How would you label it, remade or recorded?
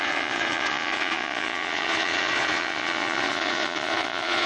remade